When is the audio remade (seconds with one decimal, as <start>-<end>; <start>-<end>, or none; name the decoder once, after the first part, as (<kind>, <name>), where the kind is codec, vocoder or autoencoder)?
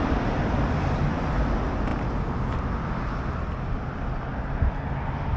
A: none